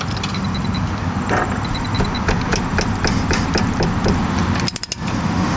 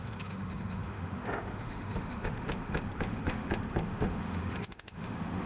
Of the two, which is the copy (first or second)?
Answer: second